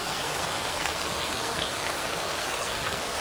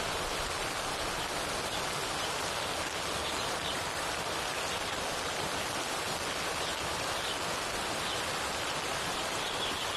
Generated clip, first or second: first